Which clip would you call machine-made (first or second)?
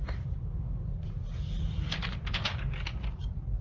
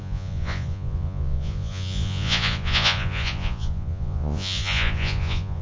second